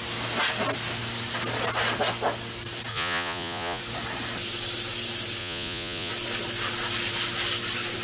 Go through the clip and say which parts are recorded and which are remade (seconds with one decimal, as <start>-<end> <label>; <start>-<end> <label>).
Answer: 0.0-2.9 recorded; 2.9-3.8 remade; 3.8-5.4 recorded; 5.4-6.1 remade; 6.1-8.0 recorded